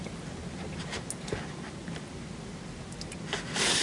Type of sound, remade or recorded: recorded